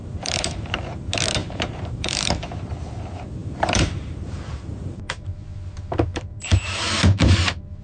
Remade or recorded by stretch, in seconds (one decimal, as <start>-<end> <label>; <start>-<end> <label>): 0.0-0.8 remade; 0.8-1.4 recorded; 1.4-2.4 remade; 2.4-3.4 recorded; 3.4-7.8 remade

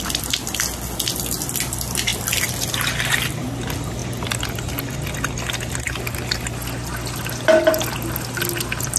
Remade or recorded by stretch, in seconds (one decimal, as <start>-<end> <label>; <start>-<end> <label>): 0.0-9.0 recorded

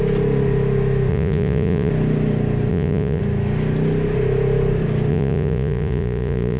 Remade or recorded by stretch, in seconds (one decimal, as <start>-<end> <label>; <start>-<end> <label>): 0.0-1.1 recorded; 1.1-1.9 remade; 1.9-2.7 recorded; 2.7-3.2 remade; 3.2-5.1 recorded; 5.1-6.6 remade

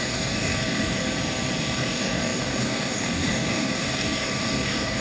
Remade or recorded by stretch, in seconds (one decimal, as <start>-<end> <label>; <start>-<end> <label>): 0.0-1.0 remade; 1.0-1.6 recorded; 1.6-5.0 remade

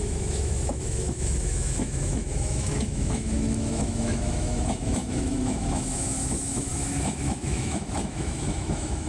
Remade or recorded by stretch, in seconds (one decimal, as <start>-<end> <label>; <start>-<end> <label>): 0.0-9.1 remade

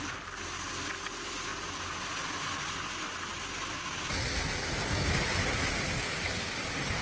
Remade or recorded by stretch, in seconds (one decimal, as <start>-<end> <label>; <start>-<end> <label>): 0.0-7.0 recorded